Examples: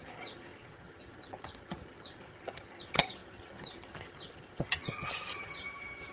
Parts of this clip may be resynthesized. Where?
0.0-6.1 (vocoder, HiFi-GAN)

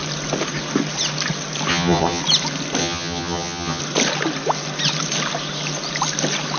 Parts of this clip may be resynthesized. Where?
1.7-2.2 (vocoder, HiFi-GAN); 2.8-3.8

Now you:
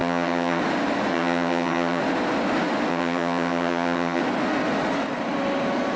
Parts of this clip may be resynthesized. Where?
0.0-0.6 (vocoder, HiFi-GAN); 1.1-2.0; 2.9-4.2

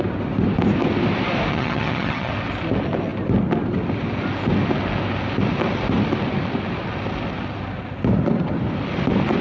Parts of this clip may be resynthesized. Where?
1.5-2.3 (vocoder, HiFi-GAN)

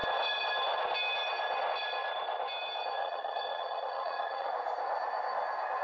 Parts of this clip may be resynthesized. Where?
3.0-4.5 (vocoder, HiFi-GAN)

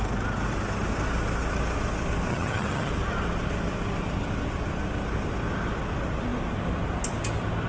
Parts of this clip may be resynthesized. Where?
2.3-2.9 (vocoder, HiFi-GAN)